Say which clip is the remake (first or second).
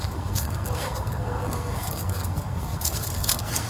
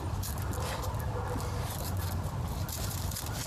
first